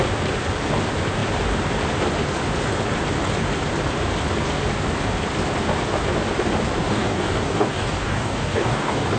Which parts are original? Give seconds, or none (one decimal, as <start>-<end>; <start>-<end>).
0.0-6.8